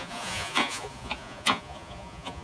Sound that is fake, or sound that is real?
fake